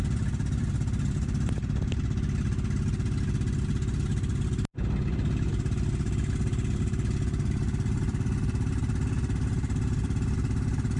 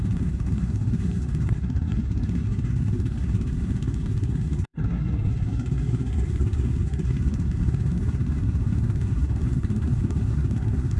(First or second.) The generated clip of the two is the second